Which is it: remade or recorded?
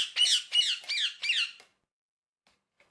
recorded